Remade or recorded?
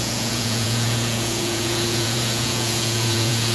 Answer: remade